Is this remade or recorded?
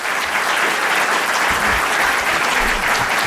recorded